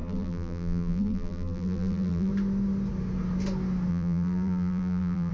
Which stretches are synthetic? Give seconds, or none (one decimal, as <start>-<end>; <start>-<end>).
0.0-2.3; 3.9-5.3